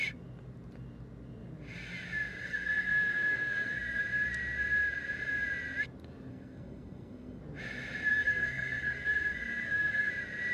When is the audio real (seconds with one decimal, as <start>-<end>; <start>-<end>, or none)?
0.0-2.4; 4.0-6.3; 7.4-8.1; 10.1-10.5